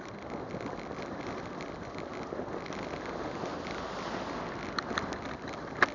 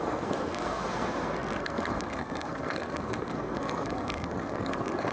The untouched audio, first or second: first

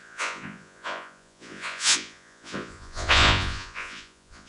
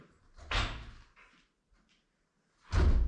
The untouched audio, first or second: second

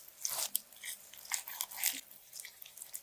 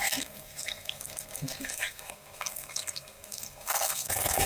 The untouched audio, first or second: first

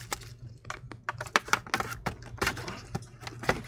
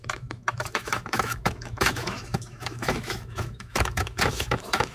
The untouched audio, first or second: first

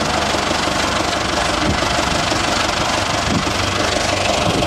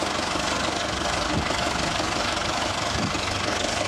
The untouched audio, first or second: first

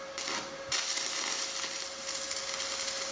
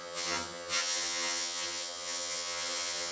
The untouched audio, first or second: first